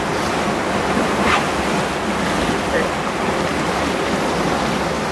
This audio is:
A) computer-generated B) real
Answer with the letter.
B